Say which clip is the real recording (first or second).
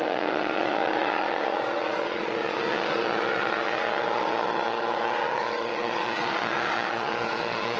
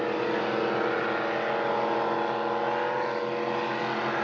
second